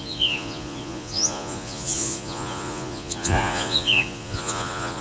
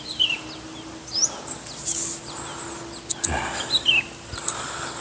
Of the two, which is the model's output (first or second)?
first